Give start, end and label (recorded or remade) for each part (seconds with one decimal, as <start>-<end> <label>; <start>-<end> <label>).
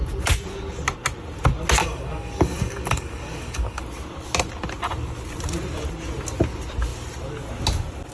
0.0-1.8 recorded; 1.8-3.8 remade; 3.8-8.1 recorded